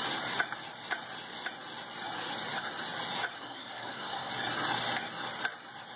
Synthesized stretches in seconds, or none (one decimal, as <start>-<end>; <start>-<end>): 3.4-4.3